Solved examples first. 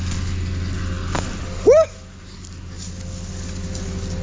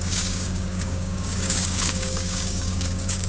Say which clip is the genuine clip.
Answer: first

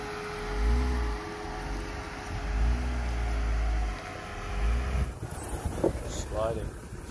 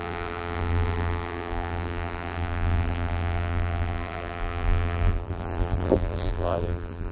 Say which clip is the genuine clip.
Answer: first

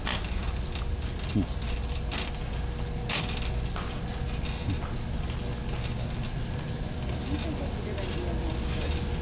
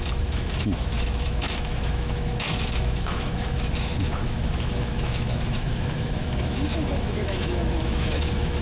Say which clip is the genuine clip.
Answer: first